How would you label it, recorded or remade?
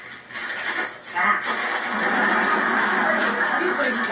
recorded